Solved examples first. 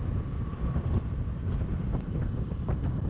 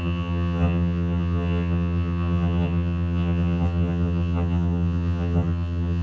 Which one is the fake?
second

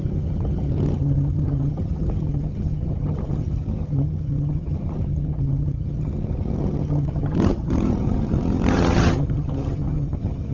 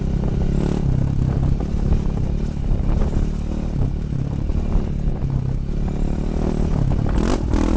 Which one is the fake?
first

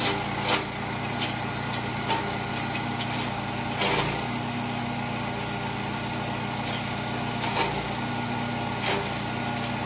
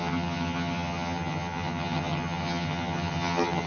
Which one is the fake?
second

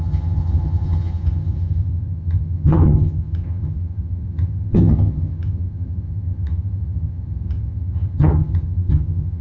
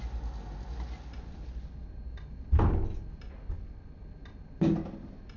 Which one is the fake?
first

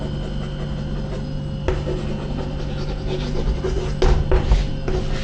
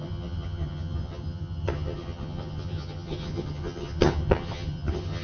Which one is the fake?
second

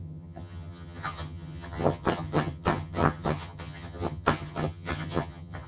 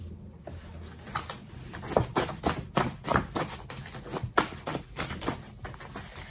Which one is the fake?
first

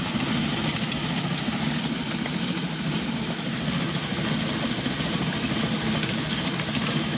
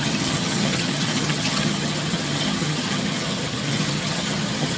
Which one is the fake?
second